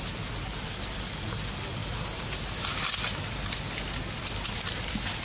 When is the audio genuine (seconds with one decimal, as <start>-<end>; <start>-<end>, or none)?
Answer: 0.0-5.2